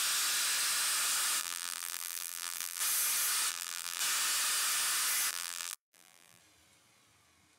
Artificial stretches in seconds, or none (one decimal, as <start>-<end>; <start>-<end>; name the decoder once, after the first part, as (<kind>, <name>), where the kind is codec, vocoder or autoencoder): 1.4-2.8 (vocoder, BigVGAN v2); 3.5-4.0; 5.3-6.4